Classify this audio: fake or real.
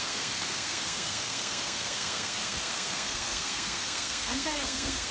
fake